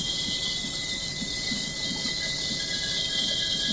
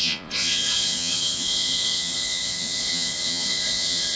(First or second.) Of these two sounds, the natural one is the first